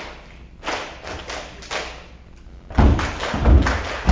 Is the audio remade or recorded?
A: recorded